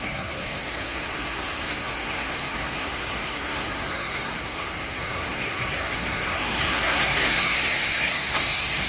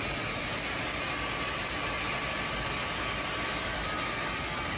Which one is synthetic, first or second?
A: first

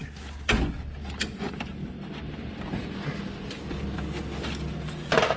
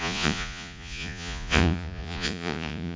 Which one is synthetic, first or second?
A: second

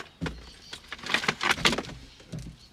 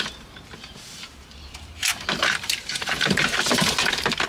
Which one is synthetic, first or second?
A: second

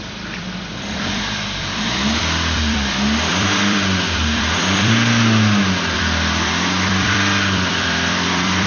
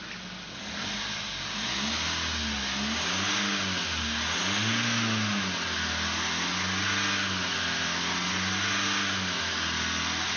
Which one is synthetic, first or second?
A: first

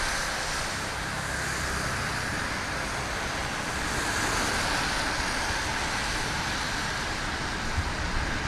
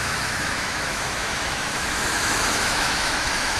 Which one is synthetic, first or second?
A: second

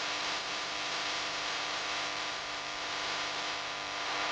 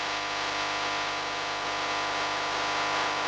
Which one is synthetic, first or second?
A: first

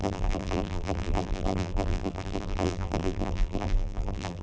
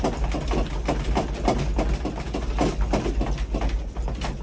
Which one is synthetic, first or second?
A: first